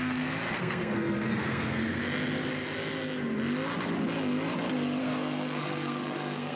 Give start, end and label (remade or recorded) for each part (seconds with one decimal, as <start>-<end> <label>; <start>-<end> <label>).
0.0-2.0 remade; 2.0-5.0 recorded; 5.0-6.6 remade